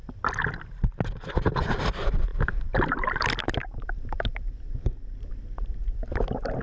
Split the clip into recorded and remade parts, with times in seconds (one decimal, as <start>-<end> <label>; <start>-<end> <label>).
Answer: 0.0-2.3 recorded; 2.3-2.9 remade; 2.9-3.7 recorded; 3.7-5.3 remade; 5.3-6.6 recorded